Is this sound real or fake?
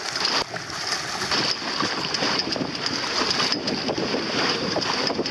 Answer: real